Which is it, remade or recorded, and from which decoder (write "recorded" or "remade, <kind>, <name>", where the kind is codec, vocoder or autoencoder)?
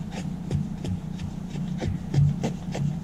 recorded